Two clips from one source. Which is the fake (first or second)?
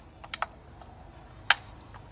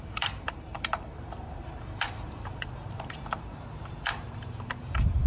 second